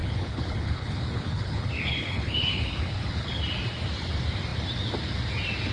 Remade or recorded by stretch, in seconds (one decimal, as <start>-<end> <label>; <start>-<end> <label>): 0.0-3.4 remade; 3.4-5.7 recorded